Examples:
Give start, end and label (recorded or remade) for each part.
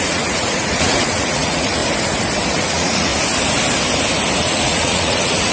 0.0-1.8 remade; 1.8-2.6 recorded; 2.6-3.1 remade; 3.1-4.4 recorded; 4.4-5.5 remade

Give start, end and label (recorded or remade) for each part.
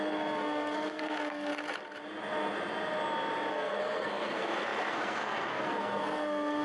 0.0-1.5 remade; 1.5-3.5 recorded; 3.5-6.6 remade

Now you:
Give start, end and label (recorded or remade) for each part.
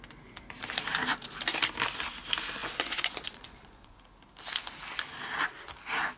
0.0-2.6 recorded; 2.6-4.0 remade; 4.0-6.2 recorded